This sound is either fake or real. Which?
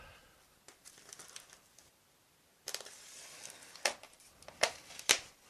real